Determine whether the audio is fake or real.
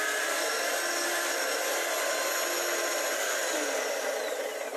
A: real